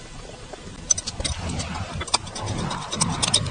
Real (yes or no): no